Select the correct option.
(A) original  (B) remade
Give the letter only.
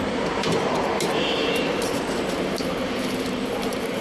B